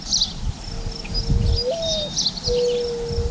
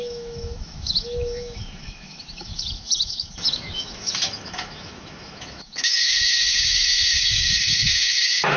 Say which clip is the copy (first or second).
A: second